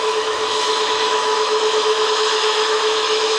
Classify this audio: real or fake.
fake